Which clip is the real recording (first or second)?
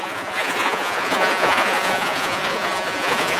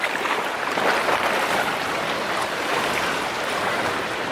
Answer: second